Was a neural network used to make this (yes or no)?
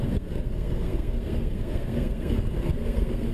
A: yes